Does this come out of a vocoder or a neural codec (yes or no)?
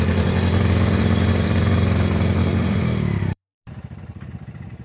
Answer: yes